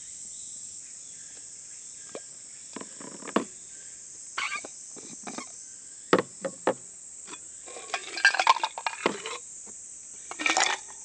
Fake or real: real